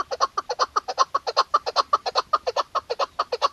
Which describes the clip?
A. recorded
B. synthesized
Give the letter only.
A